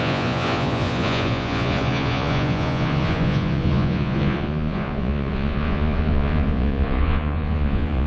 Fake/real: fake